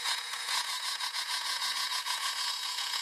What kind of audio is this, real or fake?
fake